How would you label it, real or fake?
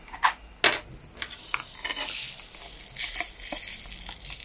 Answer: real